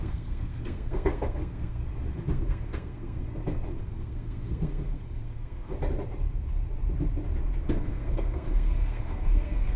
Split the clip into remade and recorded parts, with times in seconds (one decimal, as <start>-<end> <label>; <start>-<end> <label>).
0.0-1.8 remade; 1.8-2.3 recorded; 2.3-3.3 remade; 3.3-3.8 recorded; 3.8-5.7 remade; 5.7-7.7 recorded; 7.7-9.8 remade